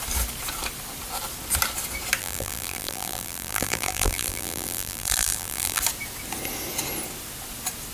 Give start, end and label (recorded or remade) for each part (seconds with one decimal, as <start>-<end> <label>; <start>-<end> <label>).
0.0-2.2 recorded; 2.2-5.8 remade; 5.8-7.9 recorded